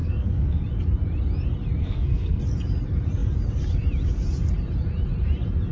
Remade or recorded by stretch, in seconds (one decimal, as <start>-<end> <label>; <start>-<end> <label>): 0.0-0.6 remade; 0.6-1.8 recorded; 1.8-2.4 remade; 2.4-5.7 recorded